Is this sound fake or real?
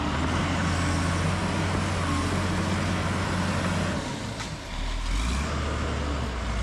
real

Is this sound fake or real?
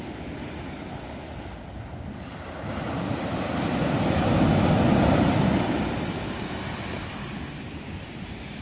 real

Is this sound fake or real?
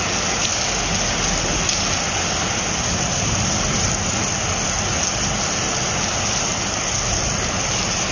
real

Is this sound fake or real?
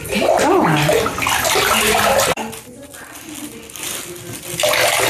real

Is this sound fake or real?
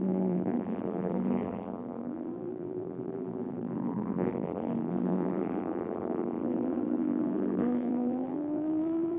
fake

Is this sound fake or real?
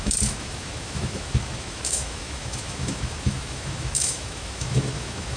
fake